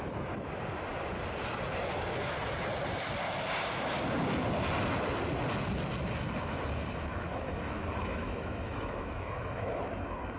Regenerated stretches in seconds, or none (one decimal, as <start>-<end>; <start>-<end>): 7.1-9.8